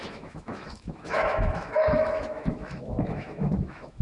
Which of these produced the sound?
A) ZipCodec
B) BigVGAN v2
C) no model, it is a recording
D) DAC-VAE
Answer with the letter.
D